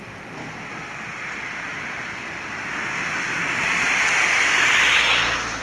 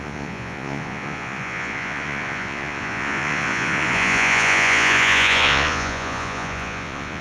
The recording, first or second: first